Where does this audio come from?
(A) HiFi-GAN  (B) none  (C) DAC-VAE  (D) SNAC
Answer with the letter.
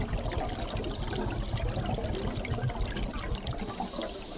B